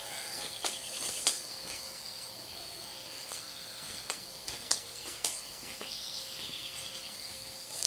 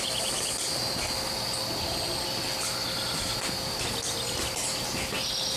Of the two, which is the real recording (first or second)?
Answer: second